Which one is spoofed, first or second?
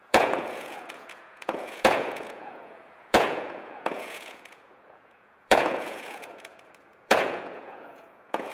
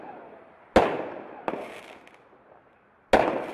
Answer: first